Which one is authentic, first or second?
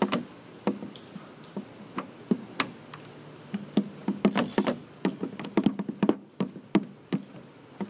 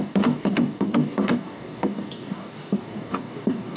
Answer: first